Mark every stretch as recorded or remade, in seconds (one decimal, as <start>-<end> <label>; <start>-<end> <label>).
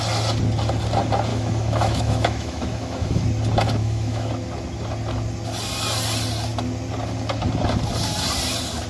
0.0-1.3 recorded; 1.3-3.2 remade; 3.2-3.8 recorded; 3.8-4.3 remade; 4.3-8.9 recorded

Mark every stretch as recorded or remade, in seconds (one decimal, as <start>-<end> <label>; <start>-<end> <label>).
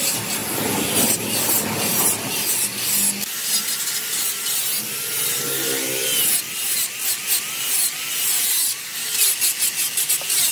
0.0-10.5 recorded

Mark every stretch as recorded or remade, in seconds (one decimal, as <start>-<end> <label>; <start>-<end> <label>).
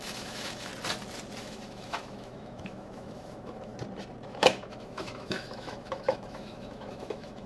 0.0-0.7 remade; 0.7-1.4 recorded; 1.4-3.7 remade; 3.7-4.3 recorded; 4.3-7.5 remade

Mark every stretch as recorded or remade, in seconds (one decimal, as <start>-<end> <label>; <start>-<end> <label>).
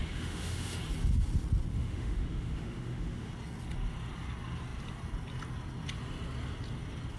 0.0-0.8 remade; 0.8-1.7 recorded; 1.7-3.3 remade; 3.3-7.2 recorded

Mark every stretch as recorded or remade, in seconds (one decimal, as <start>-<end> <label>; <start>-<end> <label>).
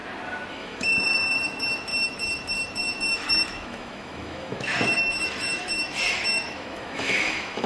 0.0-0.5 recorded; 0.5-7.7 remade